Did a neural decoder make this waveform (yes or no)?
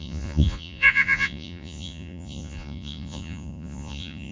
yes